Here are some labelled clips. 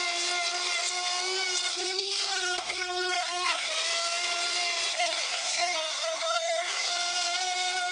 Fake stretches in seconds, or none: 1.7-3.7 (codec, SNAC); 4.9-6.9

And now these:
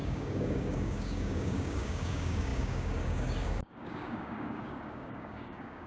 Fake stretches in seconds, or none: 0.0-5.9 (codec, DAC)

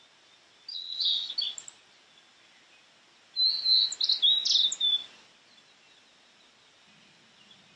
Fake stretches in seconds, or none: 0.7-1.3 (vocoder, WaveNeXt)

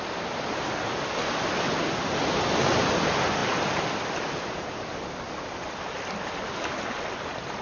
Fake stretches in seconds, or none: none

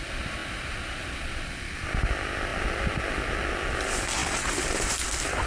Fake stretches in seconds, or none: none